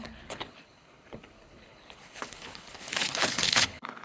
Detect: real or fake fake